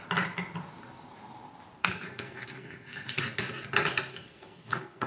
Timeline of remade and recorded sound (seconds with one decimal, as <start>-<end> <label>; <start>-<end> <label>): 0.0-1.8 recorded; 1.8-3.2 remade; 3.2-4.1 recorded; 4.1-5.1 remade